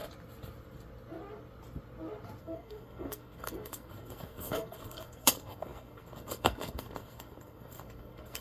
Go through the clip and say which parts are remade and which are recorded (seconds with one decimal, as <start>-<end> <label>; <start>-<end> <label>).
0.0-2.4 recorded; 2.4-8.4 remade